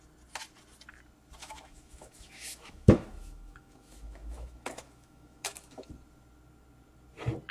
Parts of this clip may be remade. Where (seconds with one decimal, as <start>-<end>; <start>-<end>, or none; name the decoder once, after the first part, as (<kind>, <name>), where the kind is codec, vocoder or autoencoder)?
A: 1.4-5.9 (autoencoder, DAC-VAE)